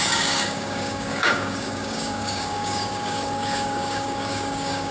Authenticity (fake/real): fake